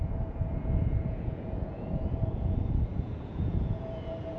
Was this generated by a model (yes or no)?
yes